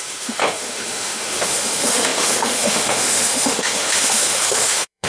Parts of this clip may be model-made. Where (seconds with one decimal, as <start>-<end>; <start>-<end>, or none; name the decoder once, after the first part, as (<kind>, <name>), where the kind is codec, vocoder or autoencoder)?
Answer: 0.0-5.1 (autoencoder, DAC-VAE)